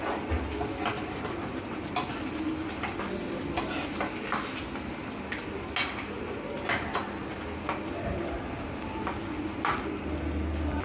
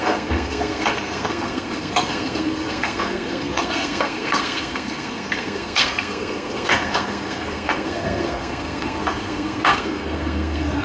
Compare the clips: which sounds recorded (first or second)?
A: first